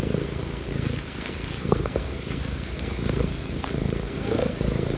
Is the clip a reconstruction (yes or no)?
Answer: yes